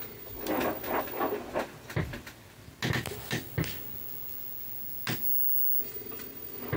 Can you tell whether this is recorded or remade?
recorded